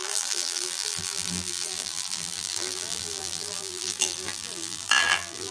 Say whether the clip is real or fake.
fake